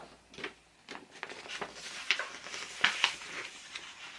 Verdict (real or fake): real